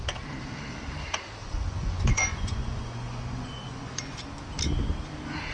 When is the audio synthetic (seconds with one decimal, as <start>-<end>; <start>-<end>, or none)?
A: 1.4-4.2